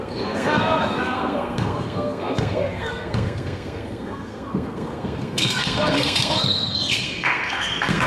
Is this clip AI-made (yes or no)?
yes